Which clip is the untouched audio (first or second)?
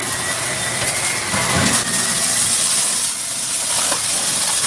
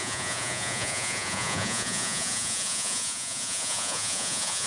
first